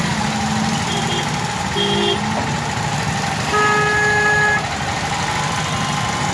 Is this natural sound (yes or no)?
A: yes